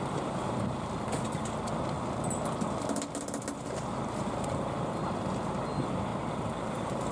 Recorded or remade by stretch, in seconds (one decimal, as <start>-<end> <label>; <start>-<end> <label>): 0.0-7.1 recorded